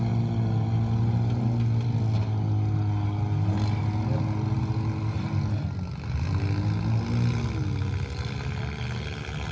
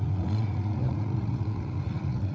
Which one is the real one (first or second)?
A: first